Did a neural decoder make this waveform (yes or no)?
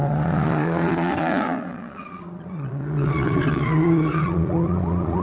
yes